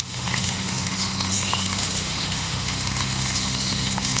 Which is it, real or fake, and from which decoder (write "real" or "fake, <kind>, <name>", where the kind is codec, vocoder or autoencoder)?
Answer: fake, autoencoder, DAC-VAE